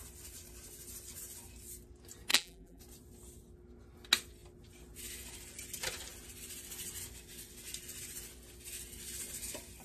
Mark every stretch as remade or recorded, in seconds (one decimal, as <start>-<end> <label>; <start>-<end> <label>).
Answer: 0.0-2.3 recorded; 2.3-2.8 remade; 2.8-9.8 recorded